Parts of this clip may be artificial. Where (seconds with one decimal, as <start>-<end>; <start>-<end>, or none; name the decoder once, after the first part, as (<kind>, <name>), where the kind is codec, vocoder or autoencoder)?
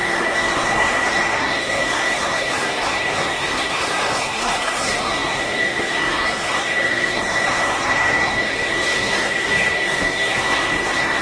0.0-11.2 (codec, SNAC)